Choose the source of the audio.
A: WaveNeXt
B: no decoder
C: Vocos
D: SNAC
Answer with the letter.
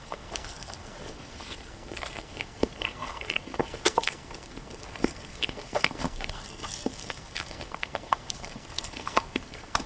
D